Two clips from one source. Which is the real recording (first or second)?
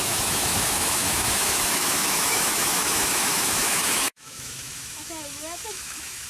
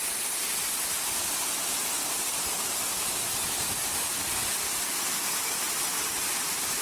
second